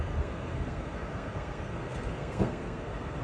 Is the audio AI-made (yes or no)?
yes